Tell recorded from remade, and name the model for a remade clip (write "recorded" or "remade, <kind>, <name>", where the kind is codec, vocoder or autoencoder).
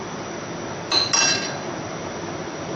recorded